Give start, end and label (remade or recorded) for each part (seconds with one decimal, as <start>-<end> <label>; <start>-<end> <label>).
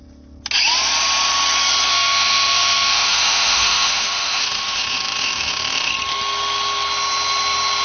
0.0-1.9 recorded; 1.9-5.9 remade; 5.9-7.8 recorded